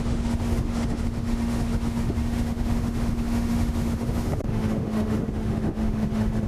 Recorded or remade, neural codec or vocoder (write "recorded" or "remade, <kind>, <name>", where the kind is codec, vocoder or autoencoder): remade, autoencoder, DAC-VAE